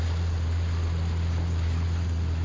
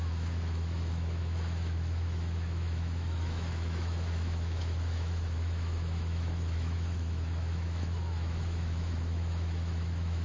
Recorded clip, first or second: first